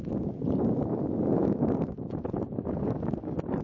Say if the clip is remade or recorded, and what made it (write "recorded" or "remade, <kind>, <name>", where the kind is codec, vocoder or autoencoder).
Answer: recorded